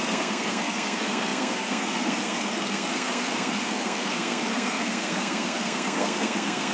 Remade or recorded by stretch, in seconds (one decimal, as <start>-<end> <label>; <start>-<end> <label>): 0.0-6.7 remade